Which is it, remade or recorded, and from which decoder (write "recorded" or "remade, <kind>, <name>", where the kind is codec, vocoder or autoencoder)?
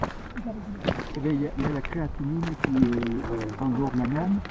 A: remade, vocoder, BigVGAN v2